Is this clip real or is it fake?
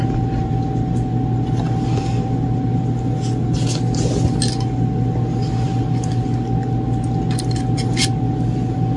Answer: real